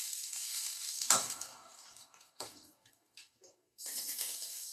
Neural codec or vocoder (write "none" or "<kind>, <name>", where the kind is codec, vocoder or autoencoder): codec, DAC